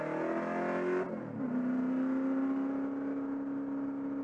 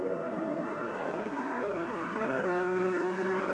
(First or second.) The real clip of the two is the first